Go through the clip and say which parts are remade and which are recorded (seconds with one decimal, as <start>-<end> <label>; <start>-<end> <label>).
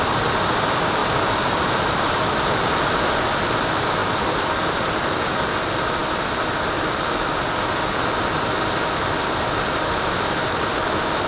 0.0-11.3 recorded